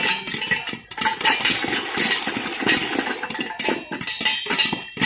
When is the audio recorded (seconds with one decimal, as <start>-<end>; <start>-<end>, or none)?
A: 0.0-5.1